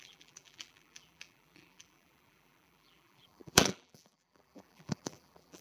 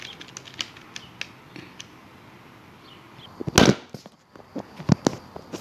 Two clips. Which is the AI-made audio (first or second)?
first